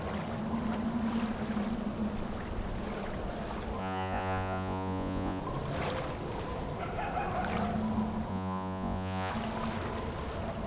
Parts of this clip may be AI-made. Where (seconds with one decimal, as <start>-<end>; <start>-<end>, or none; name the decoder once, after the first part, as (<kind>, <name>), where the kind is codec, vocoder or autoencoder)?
3.8-5.4 (vocoder, Vocos); 8.3-9.3